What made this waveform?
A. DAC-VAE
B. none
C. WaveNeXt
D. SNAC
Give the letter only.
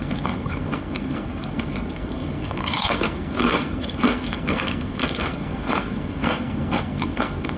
D